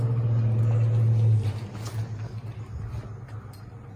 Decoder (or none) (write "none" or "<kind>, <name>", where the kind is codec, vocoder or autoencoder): none